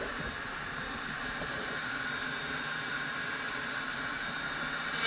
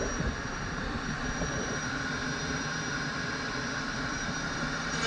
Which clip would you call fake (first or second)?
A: second